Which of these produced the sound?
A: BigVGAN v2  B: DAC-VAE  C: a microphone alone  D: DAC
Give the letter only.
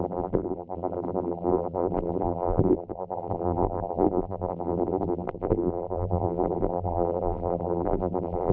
A